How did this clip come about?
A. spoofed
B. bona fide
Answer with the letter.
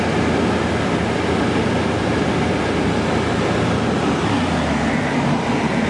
B